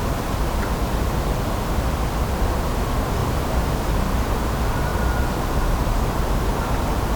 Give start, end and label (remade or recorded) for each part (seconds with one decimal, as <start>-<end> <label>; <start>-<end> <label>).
0.0-3.2 recorded; 3.2-3.9 remade; 3.9-7.2 recorded